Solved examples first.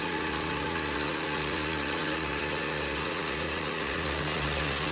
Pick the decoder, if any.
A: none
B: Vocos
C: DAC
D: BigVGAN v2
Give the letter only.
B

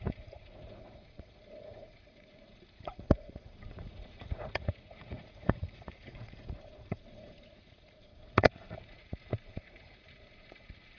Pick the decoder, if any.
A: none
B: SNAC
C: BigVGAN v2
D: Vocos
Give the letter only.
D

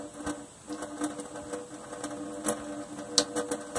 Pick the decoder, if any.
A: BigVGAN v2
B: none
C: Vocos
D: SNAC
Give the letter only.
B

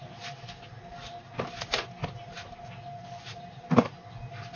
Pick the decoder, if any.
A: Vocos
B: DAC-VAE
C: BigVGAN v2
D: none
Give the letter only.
D